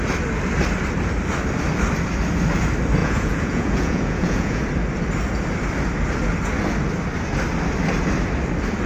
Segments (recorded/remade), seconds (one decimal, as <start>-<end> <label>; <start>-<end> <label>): 0.0-3.0 recorded; 3.0-4.6 remade; 4.6-8.9 recorded